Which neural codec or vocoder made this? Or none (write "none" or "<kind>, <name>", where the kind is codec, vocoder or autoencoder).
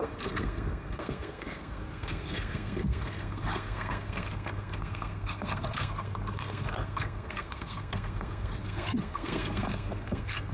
codec, SNAC